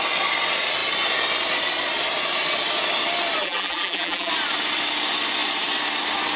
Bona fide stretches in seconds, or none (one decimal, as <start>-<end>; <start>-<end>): 0.0-3.4; 4.3-6.4